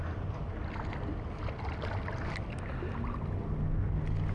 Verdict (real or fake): real